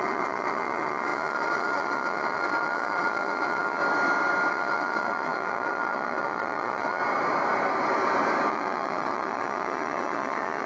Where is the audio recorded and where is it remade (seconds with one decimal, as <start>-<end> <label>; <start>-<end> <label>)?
0.0-3.8 remade; 3.8-4.5 recorded; 4.5-7.0 remade; 7.0-8.5 recorded; 8.5-10.7 remade